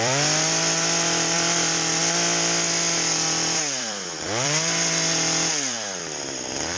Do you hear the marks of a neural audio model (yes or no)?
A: yes